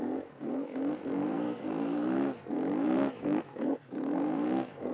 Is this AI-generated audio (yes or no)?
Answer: yes